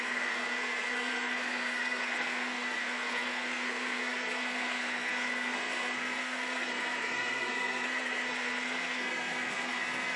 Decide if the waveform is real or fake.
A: fake